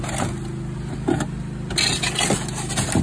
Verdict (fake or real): real